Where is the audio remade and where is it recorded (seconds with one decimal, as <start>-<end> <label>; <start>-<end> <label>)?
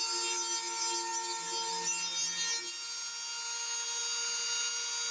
0.0-5.1 recorded